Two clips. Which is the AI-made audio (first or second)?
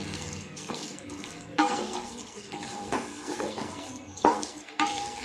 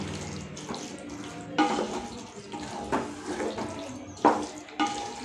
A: first